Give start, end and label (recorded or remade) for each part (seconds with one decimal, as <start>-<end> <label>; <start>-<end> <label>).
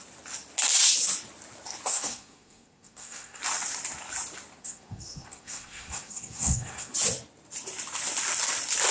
0.0-1.9 recorded; 1.9-3.4 remade; 3.4-4.6 recorded; 4.6-6.9 remade; 6.9-8.9 recorded